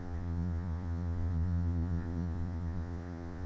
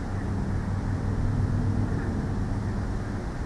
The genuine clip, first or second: second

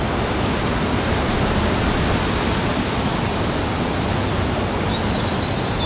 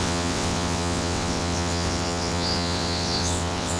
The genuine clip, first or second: first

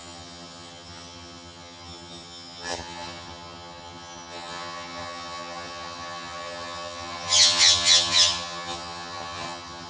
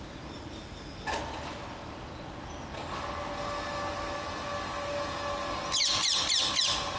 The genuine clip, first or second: second